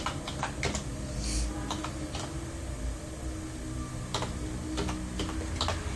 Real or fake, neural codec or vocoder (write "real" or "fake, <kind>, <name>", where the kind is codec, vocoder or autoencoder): real